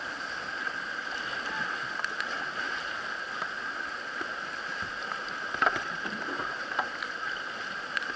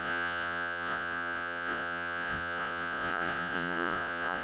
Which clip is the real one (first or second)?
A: first